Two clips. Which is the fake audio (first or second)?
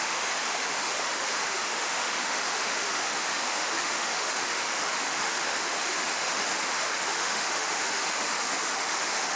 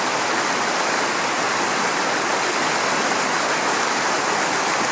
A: first